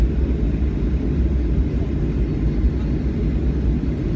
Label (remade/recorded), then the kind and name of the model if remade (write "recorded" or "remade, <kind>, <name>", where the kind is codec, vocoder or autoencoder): recorded